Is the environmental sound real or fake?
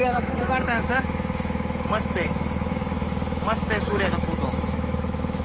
fake